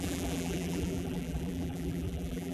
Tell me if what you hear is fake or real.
fake